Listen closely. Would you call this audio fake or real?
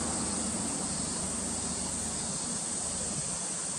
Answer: real